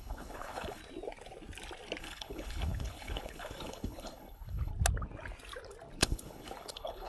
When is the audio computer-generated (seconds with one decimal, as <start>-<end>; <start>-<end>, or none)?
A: 0.0-0.8; 2.0-4.7; 6.0-7.1